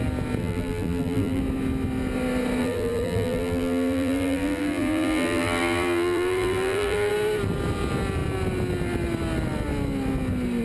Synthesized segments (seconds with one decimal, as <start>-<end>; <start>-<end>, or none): 0.4-1.4; 2.6-7.1